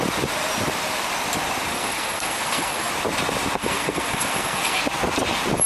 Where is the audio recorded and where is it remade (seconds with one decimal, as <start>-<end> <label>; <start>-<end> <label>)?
0.0-1.7 recorded; 1.7-2.9 remade; 2.9-3.6 recorded; 3.6-4.8 remade; 4.8-5.7 recorded